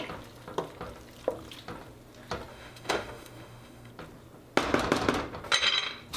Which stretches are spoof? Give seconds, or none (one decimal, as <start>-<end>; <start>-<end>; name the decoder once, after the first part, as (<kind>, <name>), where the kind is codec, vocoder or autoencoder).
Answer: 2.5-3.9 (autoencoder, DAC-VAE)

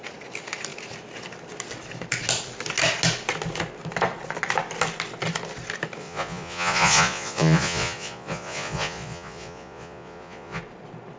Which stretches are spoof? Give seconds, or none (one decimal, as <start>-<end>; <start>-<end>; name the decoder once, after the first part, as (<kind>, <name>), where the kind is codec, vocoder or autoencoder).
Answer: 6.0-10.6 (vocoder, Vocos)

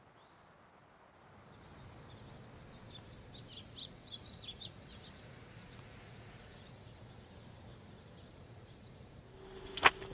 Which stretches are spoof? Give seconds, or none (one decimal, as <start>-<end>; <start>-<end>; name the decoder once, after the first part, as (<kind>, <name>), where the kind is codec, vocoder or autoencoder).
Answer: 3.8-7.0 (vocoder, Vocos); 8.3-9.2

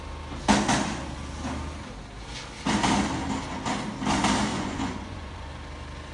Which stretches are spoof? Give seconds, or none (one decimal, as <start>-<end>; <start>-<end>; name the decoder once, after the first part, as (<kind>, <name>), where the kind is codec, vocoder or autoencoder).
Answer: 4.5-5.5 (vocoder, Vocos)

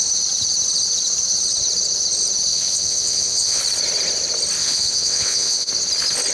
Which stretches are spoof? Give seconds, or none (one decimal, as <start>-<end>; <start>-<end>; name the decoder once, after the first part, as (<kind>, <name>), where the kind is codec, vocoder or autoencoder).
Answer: 2.5-3.6 (vocoder, WaveNeXt); 4.6-5.7

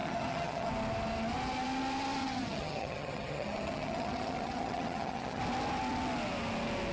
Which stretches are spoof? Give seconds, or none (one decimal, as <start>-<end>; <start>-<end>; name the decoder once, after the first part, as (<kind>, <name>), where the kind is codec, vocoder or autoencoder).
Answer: 0.0-0.7 (vocoder, HiFi-GAN); 2.2-5.4

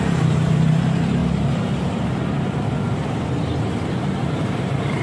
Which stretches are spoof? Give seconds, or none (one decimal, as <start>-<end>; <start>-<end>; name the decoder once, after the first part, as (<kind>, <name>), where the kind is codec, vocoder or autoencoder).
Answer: 0.0-1.2 (vocoder, BigVGAN v2); 4.0-5.0